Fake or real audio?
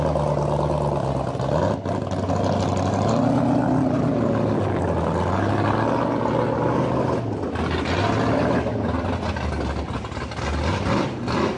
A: real